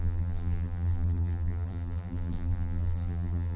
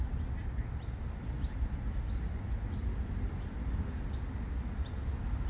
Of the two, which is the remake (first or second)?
first